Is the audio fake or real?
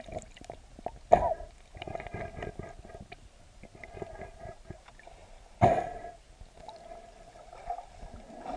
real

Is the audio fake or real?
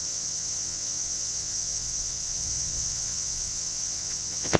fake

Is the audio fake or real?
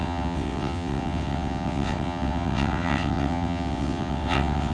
fake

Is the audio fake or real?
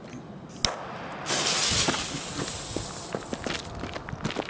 real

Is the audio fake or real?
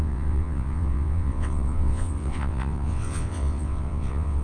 fake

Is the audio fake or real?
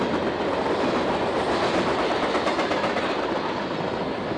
real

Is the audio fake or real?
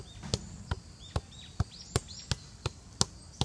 real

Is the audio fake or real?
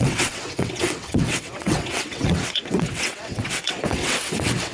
fake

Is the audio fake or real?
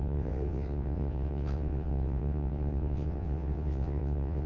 fake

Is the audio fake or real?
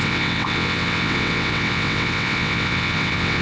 fake